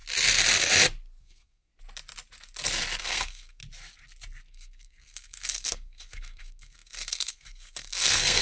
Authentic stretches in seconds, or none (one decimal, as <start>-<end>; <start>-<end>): 0.0-1.2; 1.7-3.0; 3.6-4.5